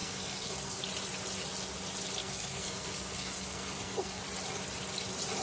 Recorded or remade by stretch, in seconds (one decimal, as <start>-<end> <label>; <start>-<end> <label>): 0.0-0.8 remade; 0.8-2.2 recorded; 2.2-4.2 remade; 4.2-5.4 recorded